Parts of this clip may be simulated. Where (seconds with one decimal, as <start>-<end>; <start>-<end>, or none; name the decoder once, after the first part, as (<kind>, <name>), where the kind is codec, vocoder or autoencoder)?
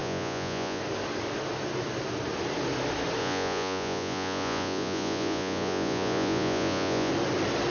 0.0-0.8 (vocoder, Vocos); 3.2-7.1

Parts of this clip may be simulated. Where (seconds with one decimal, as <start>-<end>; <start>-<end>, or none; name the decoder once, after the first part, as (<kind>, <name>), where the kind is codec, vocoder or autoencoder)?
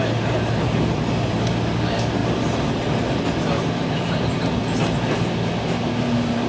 none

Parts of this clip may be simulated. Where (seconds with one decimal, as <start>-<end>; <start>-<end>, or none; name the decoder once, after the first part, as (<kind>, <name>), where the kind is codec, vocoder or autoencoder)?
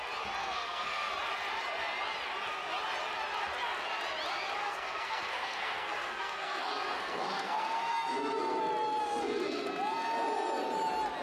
0.4-1.1 (codec, SNAC); 4.6-8.6; 9.0-9.7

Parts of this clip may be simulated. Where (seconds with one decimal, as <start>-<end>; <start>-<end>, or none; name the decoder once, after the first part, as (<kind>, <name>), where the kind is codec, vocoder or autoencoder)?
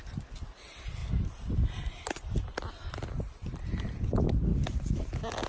4.5-5.1 (vocoder, BigVGAN v2)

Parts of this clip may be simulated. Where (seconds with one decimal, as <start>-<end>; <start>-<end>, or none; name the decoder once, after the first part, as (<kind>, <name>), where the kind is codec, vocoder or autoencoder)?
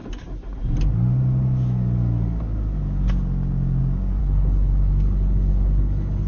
4.2-6.3 (codec, HILCodec)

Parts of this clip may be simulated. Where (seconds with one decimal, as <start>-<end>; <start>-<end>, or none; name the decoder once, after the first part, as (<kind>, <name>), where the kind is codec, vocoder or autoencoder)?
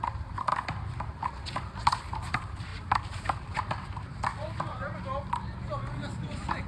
0.0-0.5 (vocoder, BigVGAN v2); 1.5-6.7